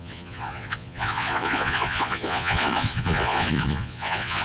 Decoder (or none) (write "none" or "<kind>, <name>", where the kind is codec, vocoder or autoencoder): vocoder, Vocos